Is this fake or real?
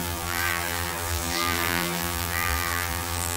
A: fake